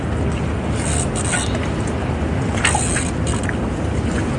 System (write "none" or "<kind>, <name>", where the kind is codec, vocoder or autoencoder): none